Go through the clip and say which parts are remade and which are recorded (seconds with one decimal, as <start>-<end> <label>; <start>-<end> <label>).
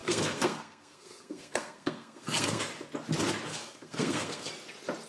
0.0-2.6 remade; 2.6-3.5 recorded; 3.5-4.5 remade; 4.5-5.1 recorded